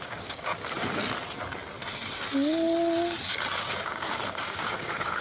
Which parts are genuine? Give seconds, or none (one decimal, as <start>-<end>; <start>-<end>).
0.5-3.6